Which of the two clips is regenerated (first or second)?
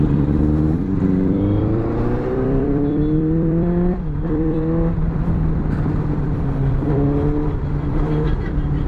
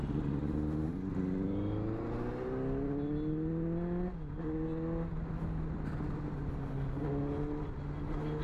first